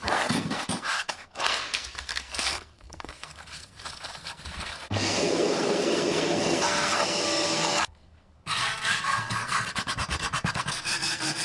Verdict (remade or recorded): remade